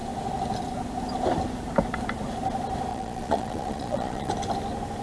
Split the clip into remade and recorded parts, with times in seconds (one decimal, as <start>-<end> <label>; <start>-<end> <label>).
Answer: 0.0-2.9 recorded; 2.9-4.3 remade; 4.3-5.0 recorded